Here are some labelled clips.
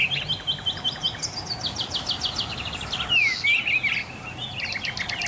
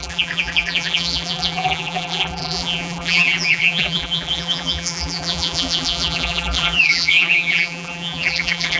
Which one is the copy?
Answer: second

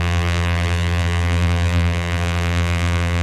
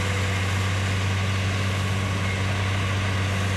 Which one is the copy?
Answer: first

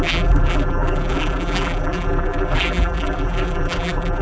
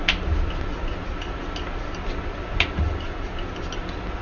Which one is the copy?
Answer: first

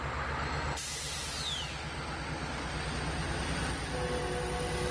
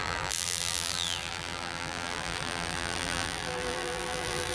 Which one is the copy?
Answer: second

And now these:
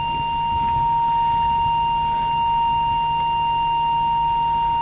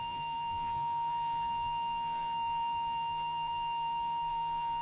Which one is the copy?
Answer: second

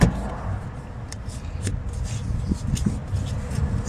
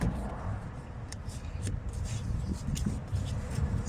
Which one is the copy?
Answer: second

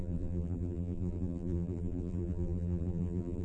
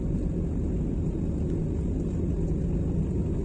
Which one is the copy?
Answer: first